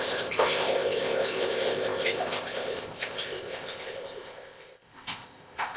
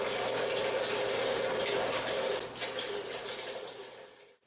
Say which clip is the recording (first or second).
second